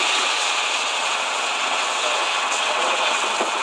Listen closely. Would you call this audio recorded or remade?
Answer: remade